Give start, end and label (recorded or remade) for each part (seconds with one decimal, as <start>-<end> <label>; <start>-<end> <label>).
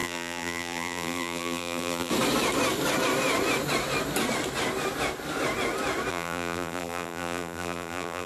0.0-2.1 remade; 2.1-6.1 recorded; 6.1-8.3 remade